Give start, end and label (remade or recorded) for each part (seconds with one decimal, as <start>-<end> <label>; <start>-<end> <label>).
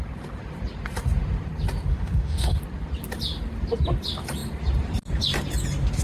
0.0-1.9 recorded; 1.9-2.6 remade; 2.6-6.0 recorded